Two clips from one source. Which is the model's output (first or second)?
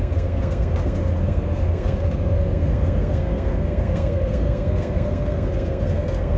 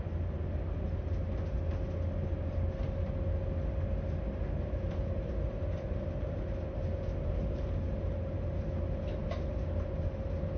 first